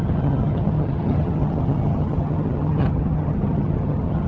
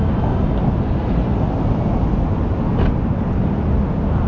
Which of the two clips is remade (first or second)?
first